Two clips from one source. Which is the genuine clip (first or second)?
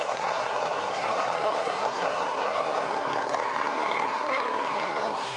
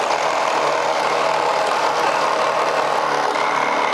second